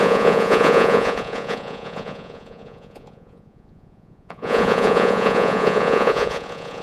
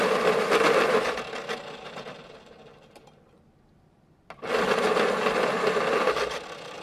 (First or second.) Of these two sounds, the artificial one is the first